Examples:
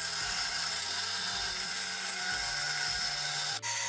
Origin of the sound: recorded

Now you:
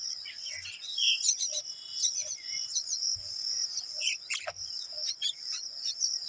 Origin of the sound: remade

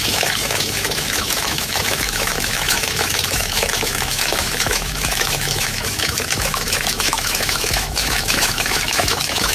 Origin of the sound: remade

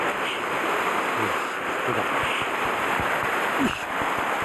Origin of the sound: recorded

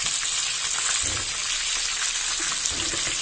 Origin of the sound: recorded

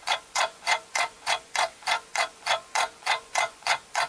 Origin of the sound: remade